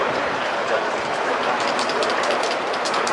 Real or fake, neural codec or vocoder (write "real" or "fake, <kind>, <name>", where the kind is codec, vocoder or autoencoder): fake, vocoder, BigVGAN v2